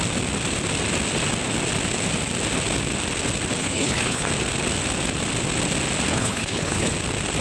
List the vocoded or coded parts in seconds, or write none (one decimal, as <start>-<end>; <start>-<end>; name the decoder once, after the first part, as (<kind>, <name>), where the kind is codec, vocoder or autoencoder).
3.6-4.3 (codec, HILCodec); 6.1-6.9